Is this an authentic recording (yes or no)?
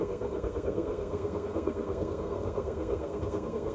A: no